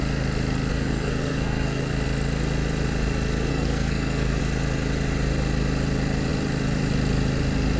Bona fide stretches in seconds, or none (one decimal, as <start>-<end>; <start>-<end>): 0.0-0.7; 1.9-3.5; 4.4-7.8